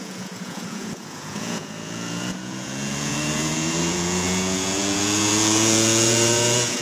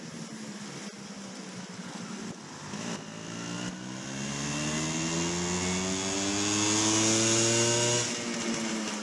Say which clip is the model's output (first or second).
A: first